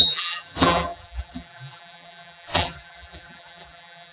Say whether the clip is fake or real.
fake